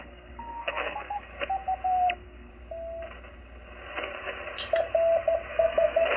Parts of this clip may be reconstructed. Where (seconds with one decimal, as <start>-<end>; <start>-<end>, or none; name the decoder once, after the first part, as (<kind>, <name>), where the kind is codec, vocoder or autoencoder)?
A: 0.0-1.3 (codec, SNAC); 2.1-2.5; 5.5-6.2

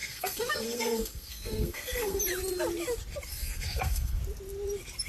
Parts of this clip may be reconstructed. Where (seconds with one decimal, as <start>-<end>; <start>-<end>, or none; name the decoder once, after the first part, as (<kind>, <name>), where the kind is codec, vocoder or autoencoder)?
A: 0.0-2.2 (codec, SNAC); 3.3-4.2